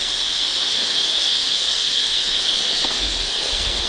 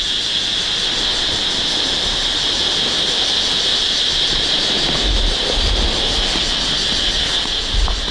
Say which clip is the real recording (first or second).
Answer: second